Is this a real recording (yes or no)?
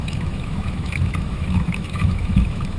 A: no